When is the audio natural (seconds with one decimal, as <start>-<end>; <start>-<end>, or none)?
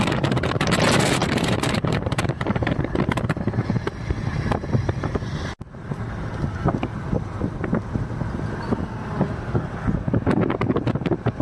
0.0-1.2; 2.9-11.4